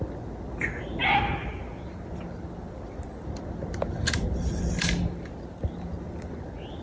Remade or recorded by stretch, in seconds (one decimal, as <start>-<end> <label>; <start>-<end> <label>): 0.0-6.8 recorded